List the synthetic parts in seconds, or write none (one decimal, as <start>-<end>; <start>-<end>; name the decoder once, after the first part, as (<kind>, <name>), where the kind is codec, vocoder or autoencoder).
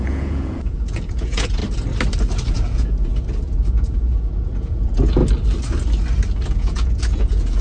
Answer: 0.0-1.6 (vocoder, Vocos); 2.5-3.1; 3.7-5.2; 6.5-7.6